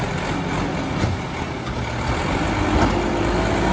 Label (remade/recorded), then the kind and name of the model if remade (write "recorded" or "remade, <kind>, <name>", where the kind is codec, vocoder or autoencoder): recorded